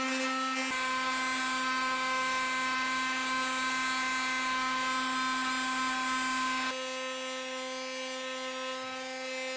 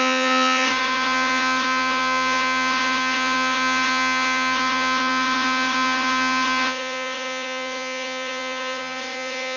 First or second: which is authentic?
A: first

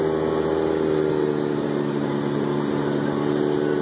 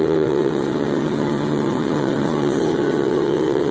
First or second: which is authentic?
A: first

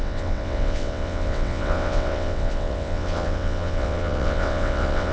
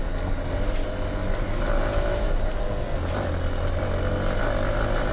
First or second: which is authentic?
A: second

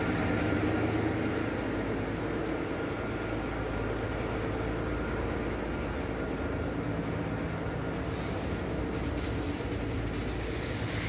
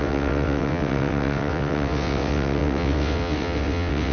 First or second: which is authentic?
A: first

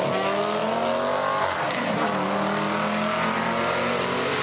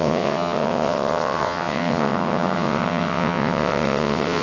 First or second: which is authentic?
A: first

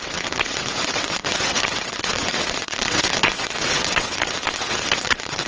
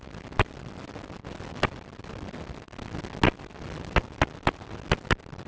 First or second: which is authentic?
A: second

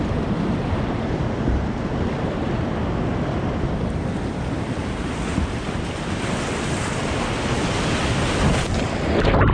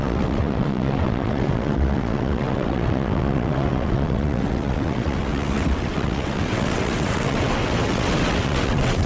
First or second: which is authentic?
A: first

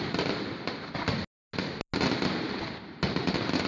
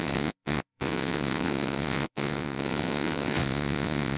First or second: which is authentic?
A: first